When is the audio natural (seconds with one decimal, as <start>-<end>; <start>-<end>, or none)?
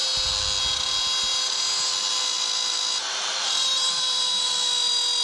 0.0-3.0; 4.5-5.2